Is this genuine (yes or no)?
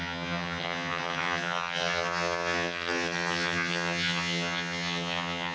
no